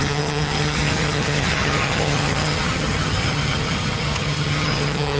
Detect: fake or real fake